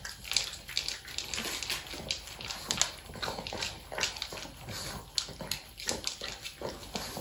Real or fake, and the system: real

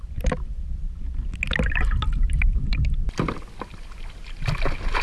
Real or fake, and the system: real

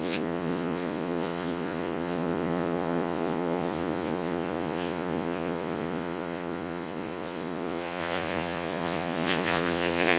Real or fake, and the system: fake, vocoder, Vocos